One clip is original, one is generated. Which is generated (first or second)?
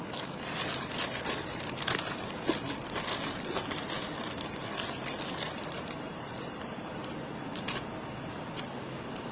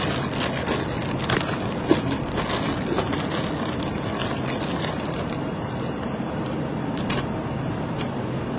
first